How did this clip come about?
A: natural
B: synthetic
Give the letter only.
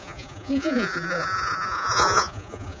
B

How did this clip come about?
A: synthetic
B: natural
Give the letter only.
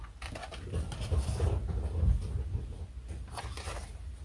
B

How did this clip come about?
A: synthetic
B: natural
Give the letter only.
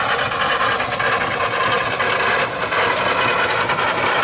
B